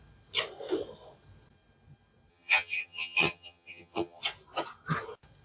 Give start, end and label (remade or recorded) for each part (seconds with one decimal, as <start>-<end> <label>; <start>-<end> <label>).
0.0-2.3 recorded; 2.3-4.2 remade; 4.2-5.4 recorded